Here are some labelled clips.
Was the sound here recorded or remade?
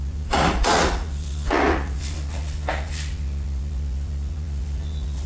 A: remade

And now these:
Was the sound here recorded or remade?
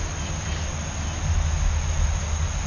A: recorded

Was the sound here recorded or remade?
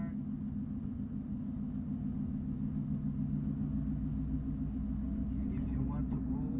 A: recorded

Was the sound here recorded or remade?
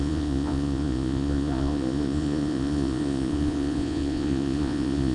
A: remade